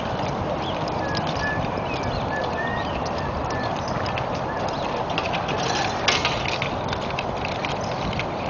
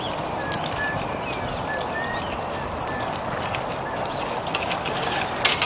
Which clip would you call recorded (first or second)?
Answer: second